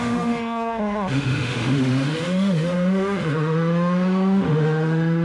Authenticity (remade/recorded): remade